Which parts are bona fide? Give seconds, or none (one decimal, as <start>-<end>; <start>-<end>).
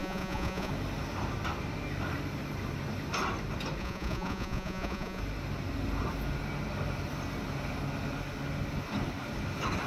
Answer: 0.7-3.8; 5.2-9.9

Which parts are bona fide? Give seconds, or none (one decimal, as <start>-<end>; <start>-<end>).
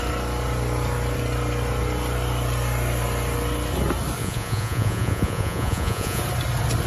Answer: 0.0-4.2; 6.2-6.9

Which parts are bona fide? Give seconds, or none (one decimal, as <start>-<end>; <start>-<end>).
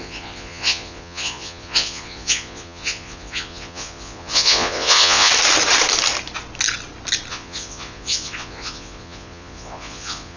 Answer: 5.3-7.3